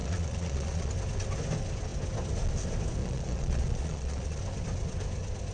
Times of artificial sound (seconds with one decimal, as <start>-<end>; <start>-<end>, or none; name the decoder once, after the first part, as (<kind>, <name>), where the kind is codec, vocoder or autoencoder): 0.0-0.9 (vocoder, Vocos); 3.0-4.4